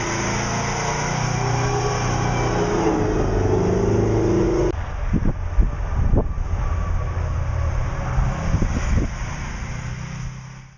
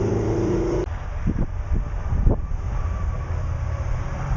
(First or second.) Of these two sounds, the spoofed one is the second